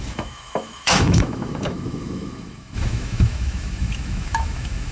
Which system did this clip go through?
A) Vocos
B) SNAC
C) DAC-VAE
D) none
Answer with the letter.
C